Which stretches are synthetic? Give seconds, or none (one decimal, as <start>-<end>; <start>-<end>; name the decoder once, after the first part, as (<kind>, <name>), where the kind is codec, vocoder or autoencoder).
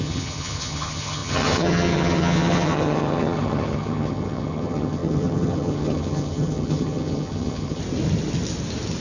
0.0-7.8 (vocoder, HiFi-GAN)